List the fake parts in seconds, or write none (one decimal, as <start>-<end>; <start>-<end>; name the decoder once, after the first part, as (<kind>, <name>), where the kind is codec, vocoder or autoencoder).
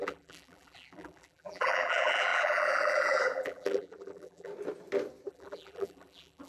0.0-4.5 (vocoder, BigVGAN v2); 5.3-6.5